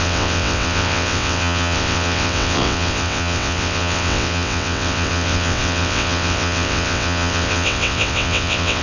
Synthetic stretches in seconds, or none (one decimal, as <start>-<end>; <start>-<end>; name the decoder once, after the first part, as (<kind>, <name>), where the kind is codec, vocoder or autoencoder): 0.0-8.8 (vocoder, WaveNeXt)